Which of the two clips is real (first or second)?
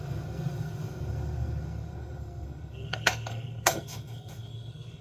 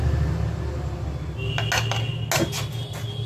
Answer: second